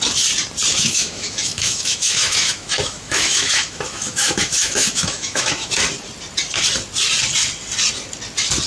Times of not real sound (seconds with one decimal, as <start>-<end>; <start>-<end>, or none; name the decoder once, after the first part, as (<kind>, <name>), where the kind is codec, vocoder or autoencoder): 0.7-5.7 (autoencoder, DAC-VAE)